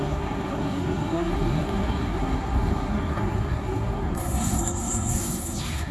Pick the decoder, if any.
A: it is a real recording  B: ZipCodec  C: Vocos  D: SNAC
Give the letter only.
D